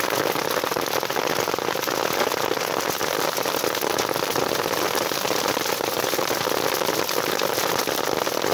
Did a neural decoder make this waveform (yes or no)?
no